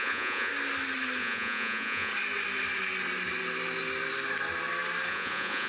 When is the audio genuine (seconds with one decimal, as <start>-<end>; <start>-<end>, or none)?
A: 0.5-1.2; 2.1-5.1